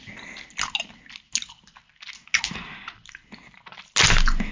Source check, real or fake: real